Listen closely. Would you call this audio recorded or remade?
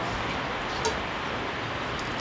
recorded